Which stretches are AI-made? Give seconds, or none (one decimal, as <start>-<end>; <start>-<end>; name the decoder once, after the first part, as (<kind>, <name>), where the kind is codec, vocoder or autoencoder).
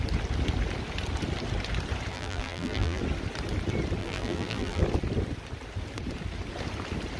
2.1-3.0 (vocoder, BigVGAN v2); 4.0-4.8